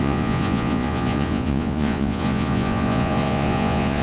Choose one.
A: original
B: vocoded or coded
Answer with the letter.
B